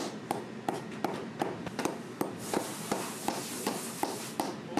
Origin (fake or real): real